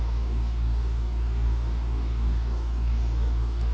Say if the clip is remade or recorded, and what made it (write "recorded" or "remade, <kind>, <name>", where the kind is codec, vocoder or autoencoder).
remade, codec, DAC